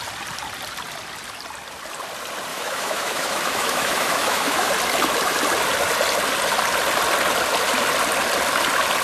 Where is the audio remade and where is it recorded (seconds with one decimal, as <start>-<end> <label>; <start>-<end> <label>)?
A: 0.0-2.5 recorded; 2.5-4.7 remade; 4.7-9.0 recorded